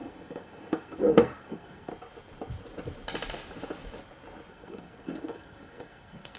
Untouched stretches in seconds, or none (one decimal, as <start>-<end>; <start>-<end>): 1.9-4.5